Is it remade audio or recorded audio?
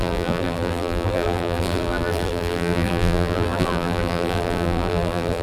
remade